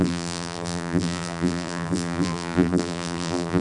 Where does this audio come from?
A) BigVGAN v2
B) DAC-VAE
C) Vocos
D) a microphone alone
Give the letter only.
A